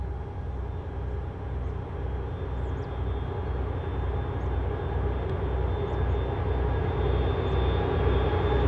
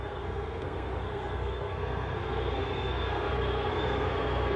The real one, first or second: first